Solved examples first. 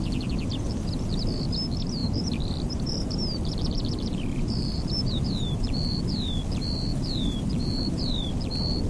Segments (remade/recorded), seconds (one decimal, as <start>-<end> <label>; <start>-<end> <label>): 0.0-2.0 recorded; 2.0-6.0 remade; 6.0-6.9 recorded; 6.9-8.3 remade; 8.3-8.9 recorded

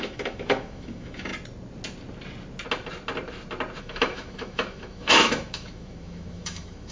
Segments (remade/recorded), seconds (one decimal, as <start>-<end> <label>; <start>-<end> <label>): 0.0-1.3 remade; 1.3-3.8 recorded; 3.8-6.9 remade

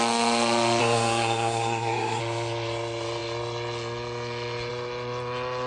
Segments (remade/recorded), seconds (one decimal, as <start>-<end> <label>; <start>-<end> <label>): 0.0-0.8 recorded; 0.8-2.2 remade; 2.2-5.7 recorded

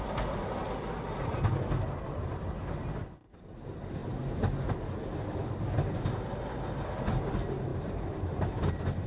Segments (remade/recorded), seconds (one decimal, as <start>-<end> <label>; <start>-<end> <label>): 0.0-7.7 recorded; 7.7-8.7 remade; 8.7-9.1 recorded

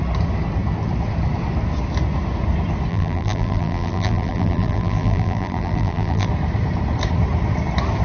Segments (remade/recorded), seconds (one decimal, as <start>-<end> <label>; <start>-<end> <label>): 0.0-2.9 recorded; 2.9-6.3 remade; 6.3-8.0 recorded

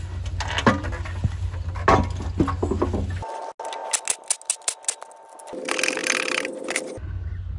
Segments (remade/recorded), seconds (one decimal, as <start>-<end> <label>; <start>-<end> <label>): 0.0-7.6 recorded